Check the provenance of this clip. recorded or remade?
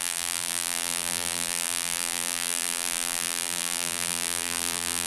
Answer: remade